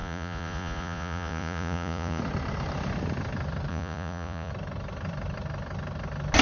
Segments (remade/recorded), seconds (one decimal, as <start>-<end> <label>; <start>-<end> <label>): 0.0-2.2 remade; 2.2-3.7 recorded; 3.7-4.5 remade; 4.5-6.4 recorded